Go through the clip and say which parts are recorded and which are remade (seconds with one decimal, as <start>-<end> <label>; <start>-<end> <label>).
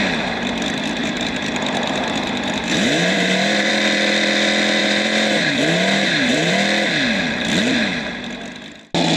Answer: 0.0-1.0 recorded; 1.0-3.7 remade; 3.7-4.8 recorded; 4.8-6.5 remade; 6.5-9.2 recorded